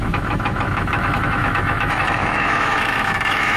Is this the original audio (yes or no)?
no